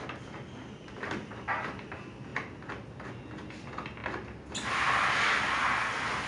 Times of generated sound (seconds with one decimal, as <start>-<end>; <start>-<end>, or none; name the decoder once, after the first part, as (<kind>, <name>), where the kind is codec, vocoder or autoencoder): none